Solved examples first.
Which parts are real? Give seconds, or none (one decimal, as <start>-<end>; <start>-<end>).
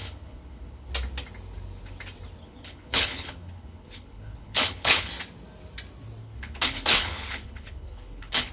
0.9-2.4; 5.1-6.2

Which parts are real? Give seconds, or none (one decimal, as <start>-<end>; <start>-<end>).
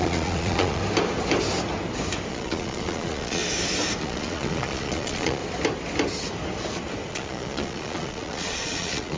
0.8-2.3; 3.4-4.0; 5.4-7.1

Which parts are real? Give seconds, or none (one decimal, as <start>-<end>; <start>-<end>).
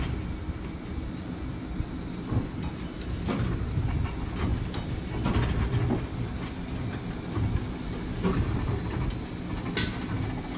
0.0-10.6